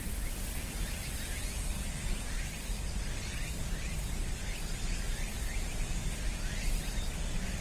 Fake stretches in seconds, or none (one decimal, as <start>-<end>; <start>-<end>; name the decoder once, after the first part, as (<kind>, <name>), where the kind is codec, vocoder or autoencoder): none